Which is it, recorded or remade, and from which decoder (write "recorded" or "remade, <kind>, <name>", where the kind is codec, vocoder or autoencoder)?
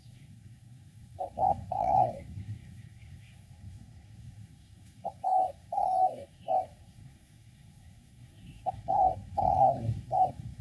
remade, codec, SNAC